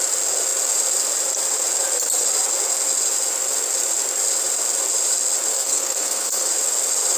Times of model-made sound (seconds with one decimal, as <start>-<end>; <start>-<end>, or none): 5.5-6.5

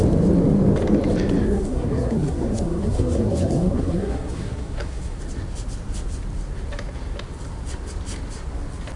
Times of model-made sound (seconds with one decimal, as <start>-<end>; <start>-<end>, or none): 1.4-5.2

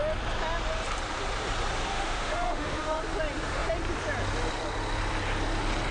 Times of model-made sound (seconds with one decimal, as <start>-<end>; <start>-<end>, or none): 1.9-3.0